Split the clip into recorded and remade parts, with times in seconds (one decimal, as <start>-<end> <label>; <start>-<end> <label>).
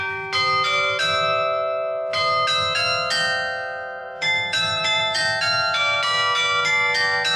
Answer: 0.0-4.0 recorded; 4.0-5.2 remade; 5.2-7.4 recorded